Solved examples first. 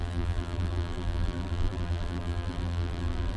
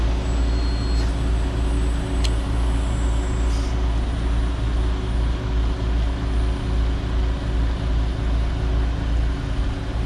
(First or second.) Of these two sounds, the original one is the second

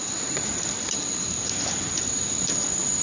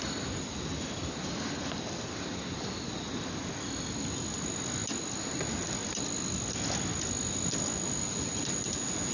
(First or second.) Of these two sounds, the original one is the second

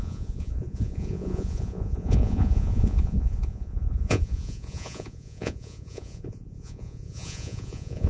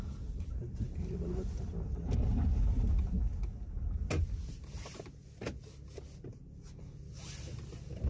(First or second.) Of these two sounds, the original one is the second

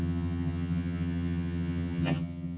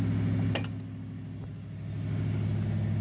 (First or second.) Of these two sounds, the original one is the second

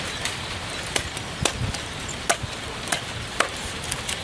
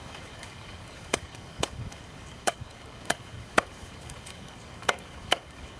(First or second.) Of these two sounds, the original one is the first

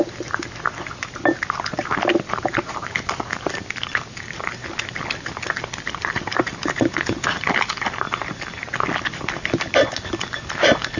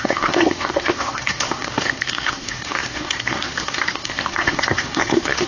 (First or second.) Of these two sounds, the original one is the first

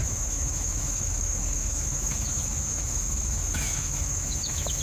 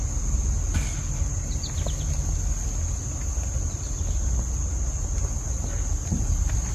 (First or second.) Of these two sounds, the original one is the second